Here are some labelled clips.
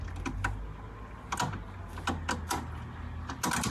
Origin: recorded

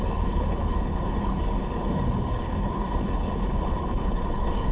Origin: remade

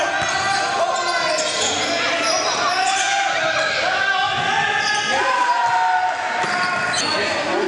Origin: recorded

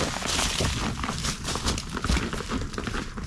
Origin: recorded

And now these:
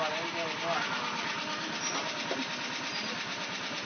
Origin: recorded